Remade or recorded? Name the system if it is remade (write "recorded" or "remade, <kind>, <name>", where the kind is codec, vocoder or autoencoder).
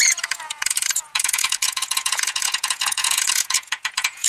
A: remade, vocoder, Vocos